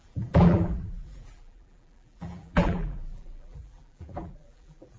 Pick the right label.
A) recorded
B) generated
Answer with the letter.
B